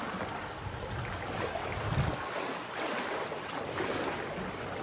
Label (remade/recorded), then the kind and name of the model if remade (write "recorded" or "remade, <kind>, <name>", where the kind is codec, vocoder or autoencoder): recorded